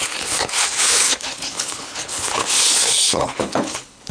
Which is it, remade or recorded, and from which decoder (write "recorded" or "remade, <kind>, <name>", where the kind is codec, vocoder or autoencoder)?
remade, codec, HILCodec